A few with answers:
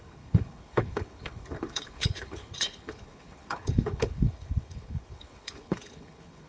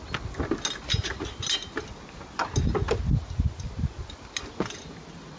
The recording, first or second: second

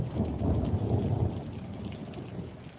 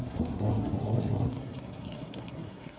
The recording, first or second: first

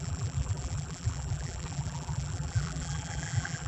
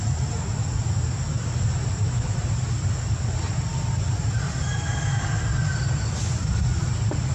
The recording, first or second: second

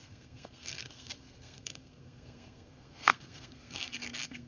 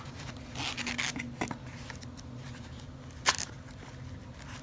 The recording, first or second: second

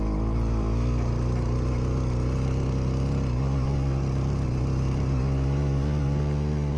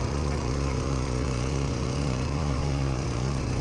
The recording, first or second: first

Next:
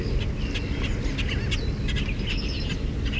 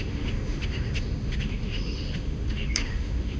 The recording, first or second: first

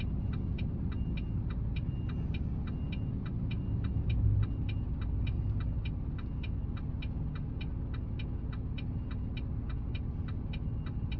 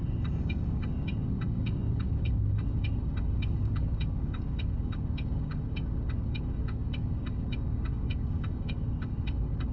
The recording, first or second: first